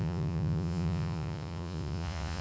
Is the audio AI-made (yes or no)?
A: yes